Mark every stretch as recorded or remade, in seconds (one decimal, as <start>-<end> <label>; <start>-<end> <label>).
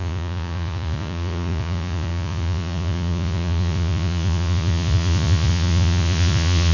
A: 0.0-6.7 remade